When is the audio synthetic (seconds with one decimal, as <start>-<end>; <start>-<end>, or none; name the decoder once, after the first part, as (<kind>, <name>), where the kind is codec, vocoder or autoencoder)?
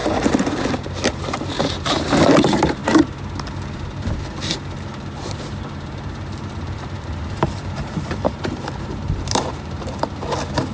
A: 4.9-10.0 (vocoder, BigVGAN v2)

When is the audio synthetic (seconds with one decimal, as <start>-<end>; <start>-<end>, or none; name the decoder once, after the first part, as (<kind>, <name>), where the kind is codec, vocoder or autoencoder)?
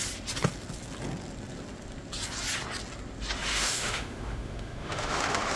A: 3.5-5.6 (autoencoder, DAC-VAE)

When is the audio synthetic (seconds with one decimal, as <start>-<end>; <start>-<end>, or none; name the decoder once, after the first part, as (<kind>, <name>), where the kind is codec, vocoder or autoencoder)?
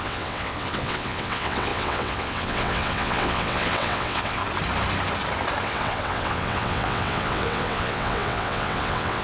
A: 0.0-4.4 (vocoder, WaveNeXt); 5.6-9.2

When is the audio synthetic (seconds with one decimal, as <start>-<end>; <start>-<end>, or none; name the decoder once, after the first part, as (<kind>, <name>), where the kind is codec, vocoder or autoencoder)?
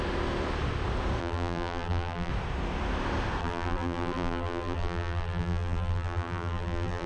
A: 1.2-2.3 (vocoder, BigVGAN v2); 3.4-7.1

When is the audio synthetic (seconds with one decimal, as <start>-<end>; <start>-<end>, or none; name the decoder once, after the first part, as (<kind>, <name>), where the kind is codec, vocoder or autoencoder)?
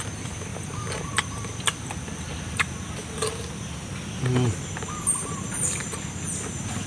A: none